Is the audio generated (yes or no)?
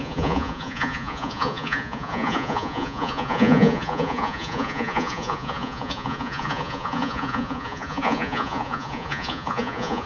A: yes